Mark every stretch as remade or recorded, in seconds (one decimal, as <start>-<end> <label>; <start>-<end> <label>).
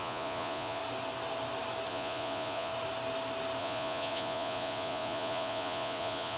0.0-0.8 remade; 0.8-1.9 recorded; 1.9-2.7 remade; 2.7-3.6 recorded; 3.6-6.4 remade